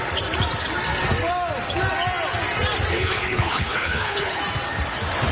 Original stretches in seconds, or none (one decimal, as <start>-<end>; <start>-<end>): 0.0-2.9; 4.4-5.3